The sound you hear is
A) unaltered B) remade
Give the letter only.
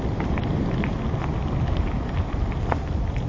A